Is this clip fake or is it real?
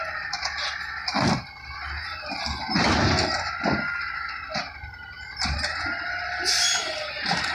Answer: real